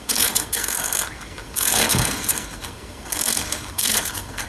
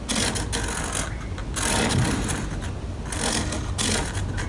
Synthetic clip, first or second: first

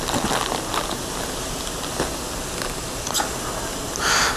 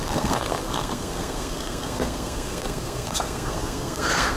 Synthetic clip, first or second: second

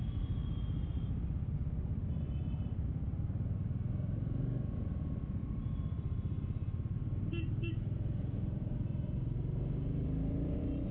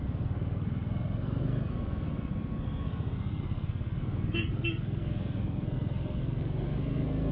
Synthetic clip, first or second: second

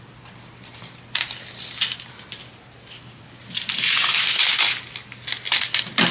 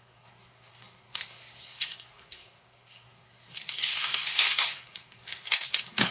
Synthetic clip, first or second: second